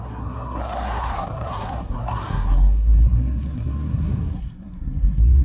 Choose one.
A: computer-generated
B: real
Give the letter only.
A